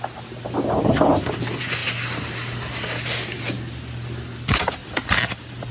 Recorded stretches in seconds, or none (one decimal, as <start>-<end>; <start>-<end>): 0.0-4.8